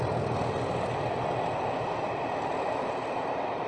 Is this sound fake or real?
real